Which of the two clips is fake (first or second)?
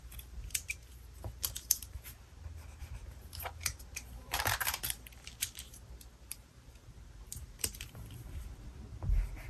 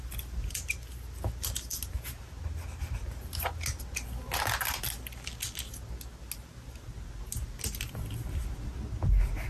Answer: first